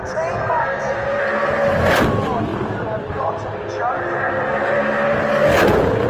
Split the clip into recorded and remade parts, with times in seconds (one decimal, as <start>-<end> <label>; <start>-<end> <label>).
0.0-0.4 recorded; 0.4-1.2 remade; 1.2-6.1 recorded